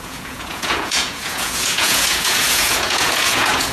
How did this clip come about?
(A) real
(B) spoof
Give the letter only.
B